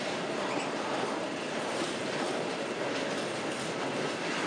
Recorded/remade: recorded